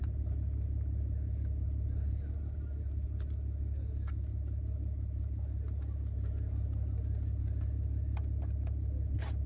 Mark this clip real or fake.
real